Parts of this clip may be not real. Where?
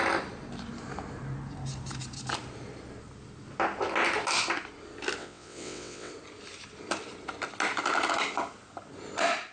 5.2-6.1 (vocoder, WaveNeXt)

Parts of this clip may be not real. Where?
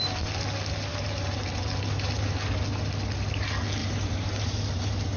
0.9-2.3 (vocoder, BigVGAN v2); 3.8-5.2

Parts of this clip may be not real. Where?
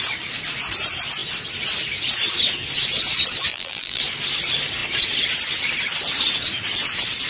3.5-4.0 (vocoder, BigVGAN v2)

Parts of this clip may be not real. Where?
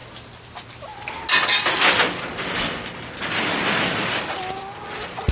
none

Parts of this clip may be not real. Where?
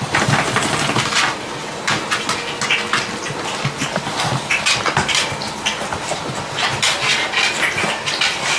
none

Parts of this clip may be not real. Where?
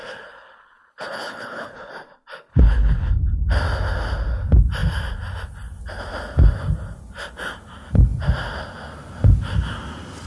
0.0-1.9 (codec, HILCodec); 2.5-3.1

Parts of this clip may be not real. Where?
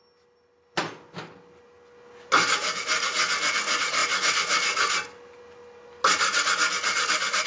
none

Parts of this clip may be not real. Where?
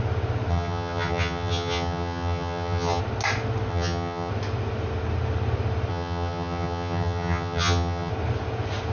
0.5-3.0 (vocoder, HiFi-GAN); 3.7-4.3; 5.9-8.1